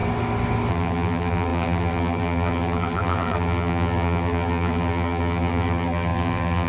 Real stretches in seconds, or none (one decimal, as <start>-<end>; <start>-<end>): 0.0-0.7